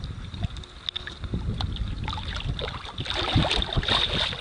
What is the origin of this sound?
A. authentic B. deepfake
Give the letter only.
A